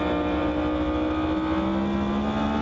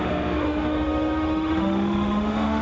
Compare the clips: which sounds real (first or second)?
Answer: first